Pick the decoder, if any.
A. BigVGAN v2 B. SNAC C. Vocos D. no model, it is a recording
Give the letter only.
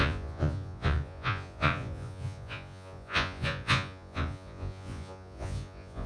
C